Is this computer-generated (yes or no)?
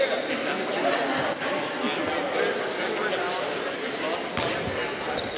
no